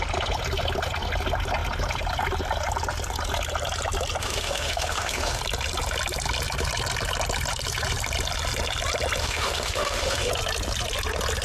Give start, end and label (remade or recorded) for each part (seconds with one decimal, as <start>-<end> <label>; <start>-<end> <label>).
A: 0.0-4.2 recorded; 4.2-5.4 remade; 5.4-9.2 recorded; 9.2-10.3 remade; 10.3-11.4 recorded